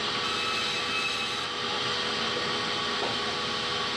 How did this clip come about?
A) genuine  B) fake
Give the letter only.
A